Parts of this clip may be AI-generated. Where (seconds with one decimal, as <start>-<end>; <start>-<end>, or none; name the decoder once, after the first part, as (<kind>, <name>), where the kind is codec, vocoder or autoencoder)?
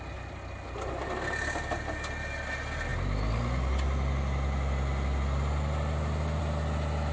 none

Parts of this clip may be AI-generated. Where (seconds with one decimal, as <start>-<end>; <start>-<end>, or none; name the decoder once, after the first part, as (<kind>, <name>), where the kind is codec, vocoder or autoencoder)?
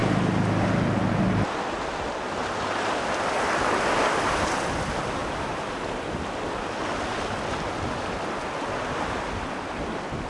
none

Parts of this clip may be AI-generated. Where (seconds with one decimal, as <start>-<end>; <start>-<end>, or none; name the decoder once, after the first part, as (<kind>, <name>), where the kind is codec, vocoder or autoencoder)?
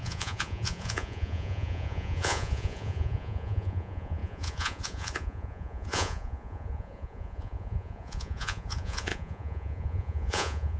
0.0-10.8 (vocoder, Vocos)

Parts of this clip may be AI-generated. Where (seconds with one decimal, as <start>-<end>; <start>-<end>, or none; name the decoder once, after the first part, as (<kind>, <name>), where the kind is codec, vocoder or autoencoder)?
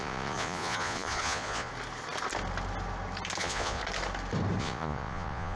0.0-1.7 (vocoder, Vocos); 3.4-3.8; 4.6-5.6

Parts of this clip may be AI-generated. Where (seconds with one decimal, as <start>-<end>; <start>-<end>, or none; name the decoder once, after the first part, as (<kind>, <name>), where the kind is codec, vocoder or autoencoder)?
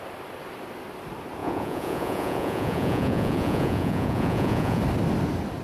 1.4-4.8 (vocoder, Vocos)